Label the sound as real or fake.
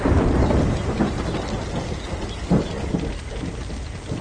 real